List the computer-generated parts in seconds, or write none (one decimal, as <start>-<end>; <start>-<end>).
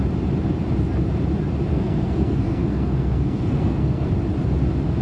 1.7-4.1